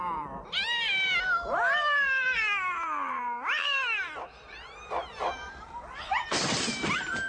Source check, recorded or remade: remade